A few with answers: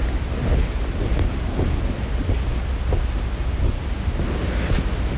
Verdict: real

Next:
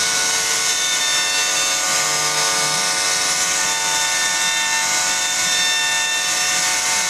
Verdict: real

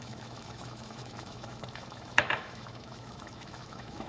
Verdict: fake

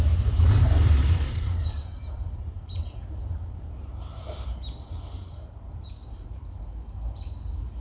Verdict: fake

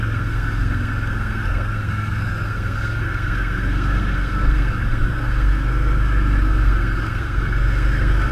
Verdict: fake